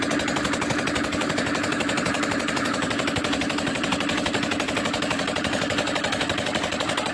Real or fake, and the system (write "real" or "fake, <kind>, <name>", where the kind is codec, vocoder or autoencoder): fake, vocoder, BigVGAN v2